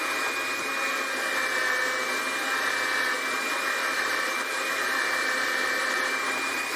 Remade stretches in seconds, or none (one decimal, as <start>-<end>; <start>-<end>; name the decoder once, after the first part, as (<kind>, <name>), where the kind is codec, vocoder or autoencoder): 3.8-6.8 (vocoder, BigVGAN v2)